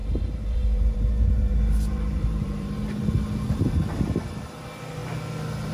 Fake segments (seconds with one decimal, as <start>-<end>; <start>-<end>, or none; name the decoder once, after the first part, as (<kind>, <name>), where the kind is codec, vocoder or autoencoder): 0.0-2.8 (vocoder, BigVGAN v2)